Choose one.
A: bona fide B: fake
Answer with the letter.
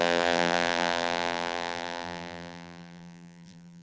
B